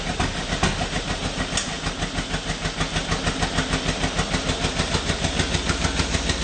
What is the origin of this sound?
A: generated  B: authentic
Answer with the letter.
B